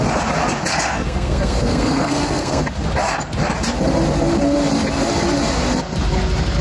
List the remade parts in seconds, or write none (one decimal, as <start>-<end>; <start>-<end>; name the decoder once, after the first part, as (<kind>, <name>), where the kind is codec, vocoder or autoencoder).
0.7-2.6 (codec, SNAC)